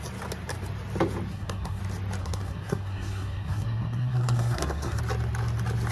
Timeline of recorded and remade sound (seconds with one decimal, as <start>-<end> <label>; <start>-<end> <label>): 0.0-1.3 recorded; 1.3-1.8 remade; 1.8-2.2 recorded; 2.2-5.0 remade; 5.0-5.9 recorded